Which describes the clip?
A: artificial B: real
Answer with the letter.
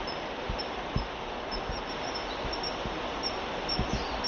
B